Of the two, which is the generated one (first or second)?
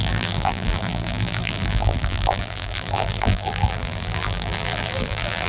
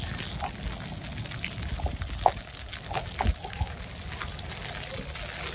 first